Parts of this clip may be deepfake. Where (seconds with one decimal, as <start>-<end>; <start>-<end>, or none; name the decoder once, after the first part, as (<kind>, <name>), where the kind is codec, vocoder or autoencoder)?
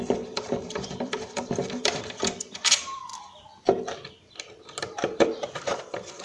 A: 0.0-3.1 (vocoder, BigVGAN v2); 5.2-6.2